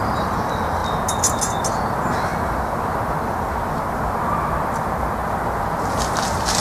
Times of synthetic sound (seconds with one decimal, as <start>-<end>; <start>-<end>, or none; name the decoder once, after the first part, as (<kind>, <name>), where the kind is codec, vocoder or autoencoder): none